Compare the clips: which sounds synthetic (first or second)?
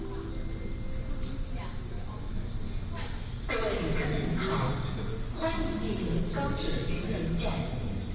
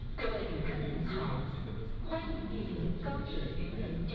second